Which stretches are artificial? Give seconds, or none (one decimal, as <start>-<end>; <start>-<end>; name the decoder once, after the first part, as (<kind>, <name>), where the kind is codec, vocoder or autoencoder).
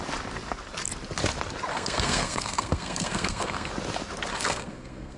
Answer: 1.7-3.7 (codec, SNAC); 4.3-5.2